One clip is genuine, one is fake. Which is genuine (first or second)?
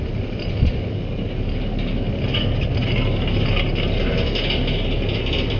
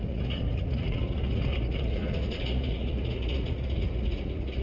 first